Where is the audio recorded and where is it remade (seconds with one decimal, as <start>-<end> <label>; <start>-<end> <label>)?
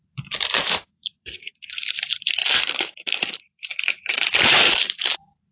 0.0-5.5 remade